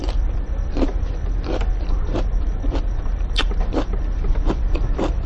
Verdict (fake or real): fake